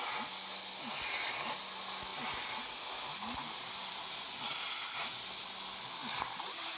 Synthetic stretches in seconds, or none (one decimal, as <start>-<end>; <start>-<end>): none